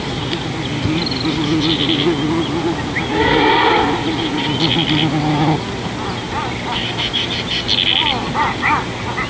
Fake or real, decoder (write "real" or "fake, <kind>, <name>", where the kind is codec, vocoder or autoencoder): real